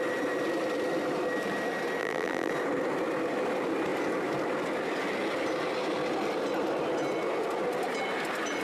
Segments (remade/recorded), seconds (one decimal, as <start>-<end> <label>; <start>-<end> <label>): 0.0-2.0 recorded; 2.0-2.5 remade; 2.5-8.6 recorded